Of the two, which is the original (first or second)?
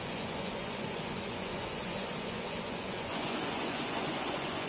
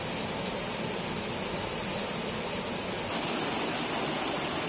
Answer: second